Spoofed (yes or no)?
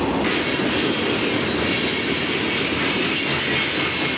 no